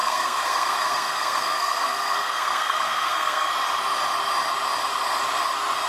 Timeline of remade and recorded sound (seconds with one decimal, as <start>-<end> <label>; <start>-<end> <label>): 0.0-3.5 remade; 3.5-5.9 recorded